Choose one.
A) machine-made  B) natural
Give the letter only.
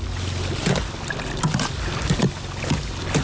B